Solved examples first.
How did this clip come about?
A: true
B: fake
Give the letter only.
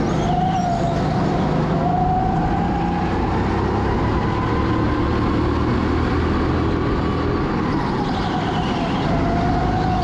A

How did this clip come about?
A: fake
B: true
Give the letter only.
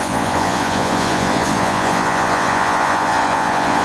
A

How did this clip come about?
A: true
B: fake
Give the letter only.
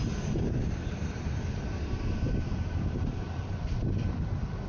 A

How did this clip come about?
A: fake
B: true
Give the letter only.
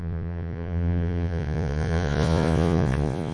A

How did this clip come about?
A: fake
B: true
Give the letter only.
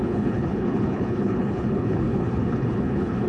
A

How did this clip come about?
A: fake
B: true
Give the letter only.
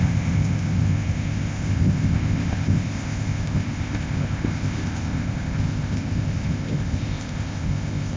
A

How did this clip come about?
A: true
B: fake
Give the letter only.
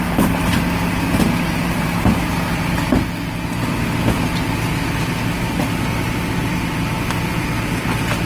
A